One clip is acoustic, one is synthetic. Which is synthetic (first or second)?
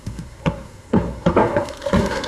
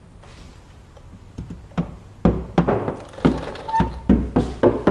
first